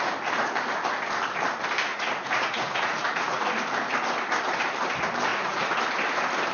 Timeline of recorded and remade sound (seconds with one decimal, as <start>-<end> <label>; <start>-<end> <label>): 0.0-1.9 recorded; 1.9-3.5 remade; 3.5-5.3 recorded; 5.3-5.8 remade; 5.8-6.5 recorded